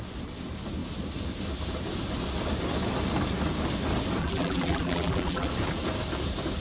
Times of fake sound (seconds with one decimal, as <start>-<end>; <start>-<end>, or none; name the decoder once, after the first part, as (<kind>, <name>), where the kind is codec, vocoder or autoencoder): 4.2-5.5 (vocoder, BigVGAN v2)